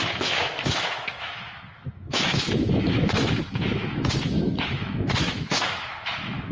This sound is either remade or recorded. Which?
remade